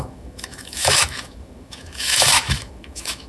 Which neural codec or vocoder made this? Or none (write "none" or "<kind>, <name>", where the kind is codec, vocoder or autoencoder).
autoencoder, DAC-VAE